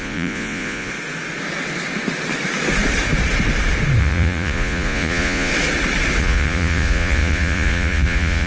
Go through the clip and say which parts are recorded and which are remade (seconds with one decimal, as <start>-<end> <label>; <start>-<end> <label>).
0.0-0.9 remade; 0.9-4.0 recorded; 4.0-5.5 remade; 5.5-6.2 recorded; 6.2-8.5 remade